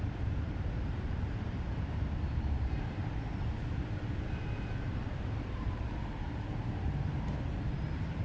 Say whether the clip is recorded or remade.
remade